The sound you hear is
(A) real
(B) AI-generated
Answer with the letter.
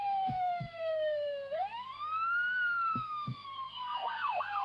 B